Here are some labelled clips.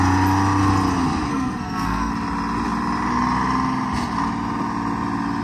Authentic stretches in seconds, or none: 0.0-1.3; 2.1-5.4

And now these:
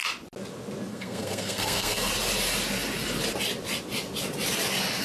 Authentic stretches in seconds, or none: 0.0-0.9; 2.1-5.0